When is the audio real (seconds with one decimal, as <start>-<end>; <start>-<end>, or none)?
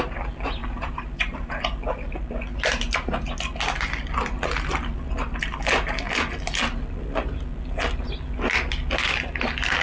0.0-0.6; 1.5-9.8